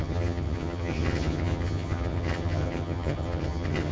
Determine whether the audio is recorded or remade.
remade